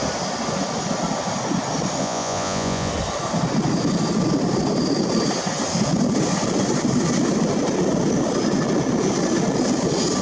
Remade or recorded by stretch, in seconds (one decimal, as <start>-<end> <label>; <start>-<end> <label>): 0.0-2.0 recorded; 2.0-2.9 remade; 2.9-10.2 recorded